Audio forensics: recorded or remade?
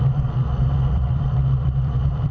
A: remade